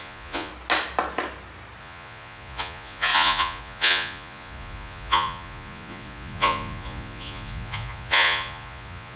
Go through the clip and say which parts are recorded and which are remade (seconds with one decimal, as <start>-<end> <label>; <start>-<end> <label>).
0.0-0.5 remade; 0.5-1.8 recorded; 1.8-9.2 remade